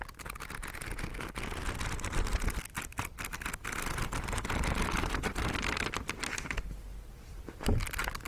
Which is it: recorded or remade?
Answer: recorded